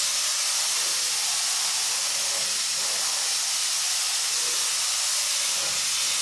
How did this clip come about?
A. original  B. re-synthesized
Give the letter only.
A